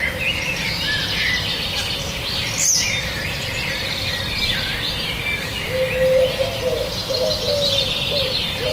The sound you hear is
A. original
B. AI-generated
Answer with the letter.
A